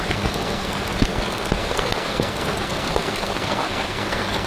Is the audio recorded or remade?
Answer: remade